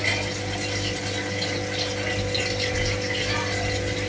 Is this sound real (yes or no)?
yes